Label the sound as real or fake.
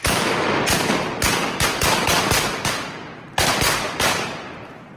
real